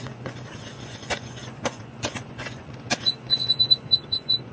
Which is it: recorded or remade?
remade